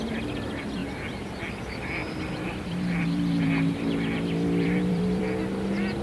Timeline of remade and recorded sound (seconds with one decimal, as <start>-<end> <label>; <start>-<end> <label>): 0.0-2.0 recorded; 2.0-5.2 remade; 5.2-6.0 recorded

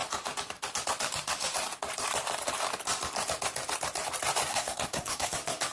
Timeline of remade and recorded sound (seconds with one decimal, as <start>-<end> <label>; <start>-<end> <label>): 0.0-4.5 recorded; 4.5-5.3 remade; 5.3-5.7 recorded

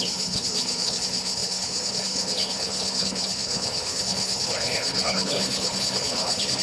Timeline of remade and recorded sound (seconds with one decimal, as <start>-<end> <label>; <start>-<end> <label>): 0.0-6.6 remade